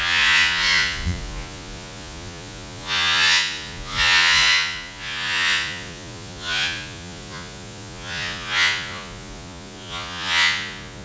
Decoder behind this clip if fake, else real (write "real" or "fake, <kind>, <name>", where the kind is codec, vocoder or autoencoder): fake, vocoder, Vocos